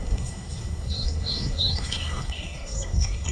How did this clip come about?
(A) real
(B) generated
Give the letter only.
B